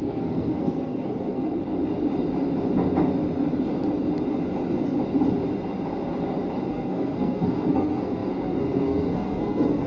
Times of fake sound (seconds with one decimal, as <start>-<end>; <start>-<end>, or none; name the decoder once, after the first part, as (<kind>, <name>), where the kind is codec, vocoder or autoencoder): 0.0-1.6 (codec, SNAC); 6.7-9.9